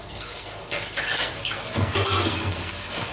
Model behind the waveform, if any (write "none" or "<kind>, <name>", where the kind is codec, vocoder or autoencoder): codec, SNAC